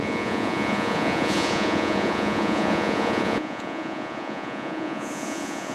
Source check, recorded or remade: remade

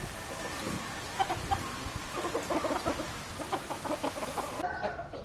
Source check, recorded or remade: recorded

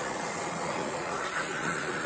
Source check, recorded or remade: remade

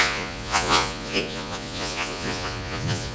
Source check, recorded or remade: remade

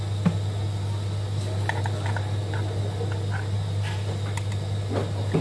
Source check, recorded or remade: recorded